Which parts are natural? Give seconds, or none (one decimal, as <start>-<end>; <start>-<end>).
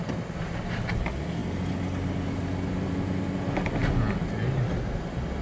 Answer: 0.0-5.4